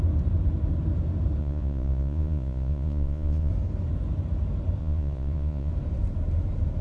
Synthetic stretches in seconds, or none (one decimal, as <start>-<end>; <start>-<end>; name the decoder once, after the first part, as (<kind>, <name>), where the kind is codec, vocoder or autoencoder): 1.4-3.5 (vocoder, Vocos); 4.8-5.7